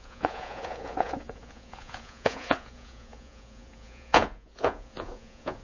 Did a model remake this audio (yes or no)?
yes